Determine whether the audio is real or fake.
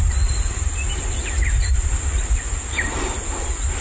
real